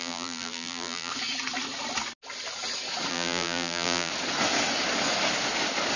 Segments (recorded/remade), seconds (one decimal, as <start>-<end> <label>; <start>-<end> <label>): 0.0-1.1 remade; 1.1-3.1 recorded; 3.1-4.1 remade; 4.1-6.0 recorded